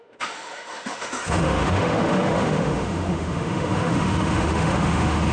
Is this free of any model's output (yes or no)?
no